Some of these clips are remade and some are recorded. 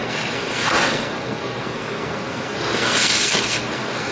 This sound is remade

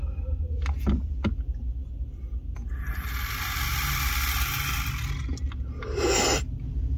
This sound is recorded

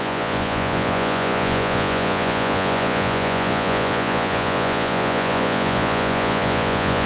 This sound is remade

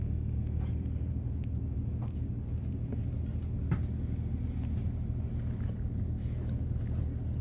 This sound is recorded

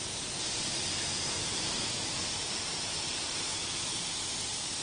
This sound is recorded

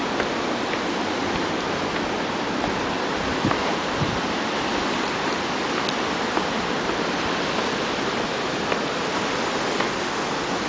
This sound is recorded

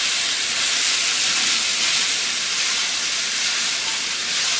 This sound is recorded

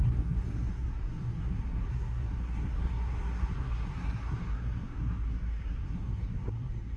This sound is remade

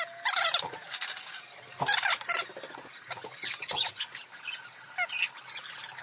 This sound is recorded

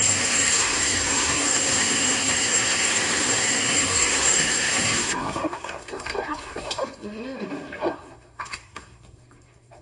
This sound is remade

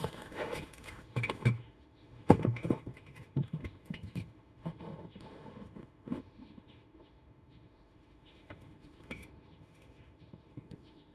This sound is remade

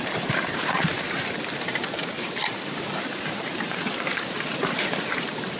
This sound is remade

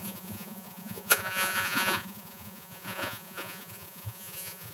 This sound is remade